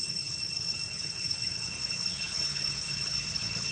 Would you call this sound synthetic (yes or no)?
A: yes